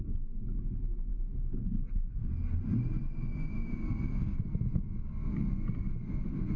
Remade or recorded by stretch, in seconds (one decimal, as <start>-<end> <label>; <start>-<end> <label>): 0.0-6.6 recorded

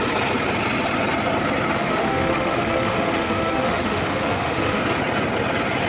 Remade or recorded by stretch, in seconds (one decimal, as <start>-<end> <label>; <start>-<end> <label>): 0.0-1.8 recorded; 1.8-4.8 remade; 4.8-5.9 recorded

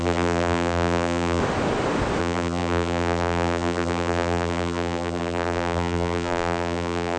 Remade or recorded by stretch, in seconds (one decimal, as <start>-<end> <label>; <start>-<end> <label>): 0.0-1.4 remade; 1.4-2.2 recorded; 2.2-7.2 remade

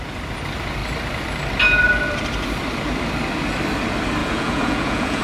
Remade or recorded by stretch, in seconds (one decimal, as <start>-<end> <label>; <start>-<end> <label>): 0.0-4.2 recorded; 4.2-5.2 remade

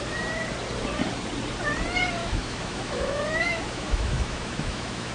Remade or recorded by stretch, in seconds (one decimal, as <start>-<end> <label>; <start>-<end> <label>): 0.0-2.2 recorded; 2.2-5.1 remade

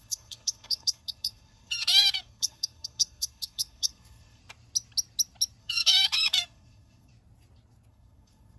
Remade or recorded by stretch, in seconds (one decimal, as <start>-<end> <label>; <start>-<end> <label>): 0.0-4.4 remade; 4.4-5.6 recorded; 5.6-7.1 remade; 7.1-7.9 recorded; 7.9-8.6 remade

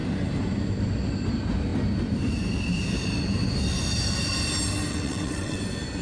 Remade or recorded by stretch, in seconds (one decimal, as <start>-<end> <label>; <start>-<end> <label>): 0.0-4.9 recorded; 4.9-5.6 remade; 5.6-6.0 recorded